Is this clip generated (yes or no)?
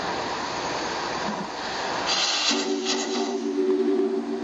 no